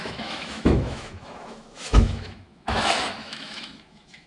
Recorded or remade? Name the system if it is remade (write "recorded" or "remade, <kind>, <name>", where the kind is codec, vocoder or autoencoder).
remade, autoencoder, DAC-VAE